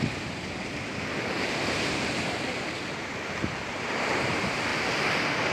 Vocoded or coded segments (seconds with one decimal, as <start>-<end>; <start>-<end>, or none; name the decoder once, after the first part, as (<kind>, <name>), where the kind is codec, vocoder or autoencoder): 0.0-5.5 (vocoder, BigVGAN v2)